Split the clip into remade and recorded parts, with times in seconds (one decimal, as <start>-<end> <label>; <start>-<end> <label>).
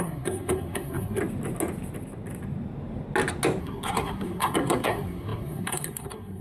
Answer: 0.0-1.2 remade; 1.2-3.6 recorded; 3.6-6.4 remade